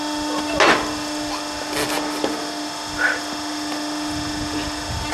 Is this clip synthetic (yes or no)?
no